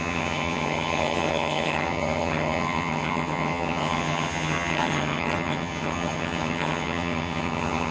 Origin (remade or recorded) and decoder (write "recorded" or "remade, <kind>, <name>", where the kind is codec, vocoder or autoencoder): remade, vocoder, HiFi-GAN